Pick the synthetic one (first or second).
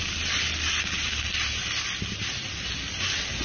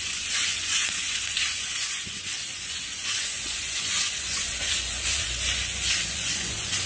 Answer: second